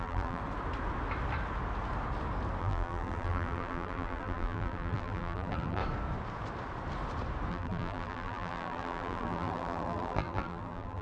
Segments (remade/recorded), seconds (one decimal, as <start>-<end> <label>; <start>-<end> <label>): 0.0-0.4 remade; 0.4-2.6 recorded; 2.6-5.8 remade; 5.8-7.5 recorded; 7.5-11.0 remade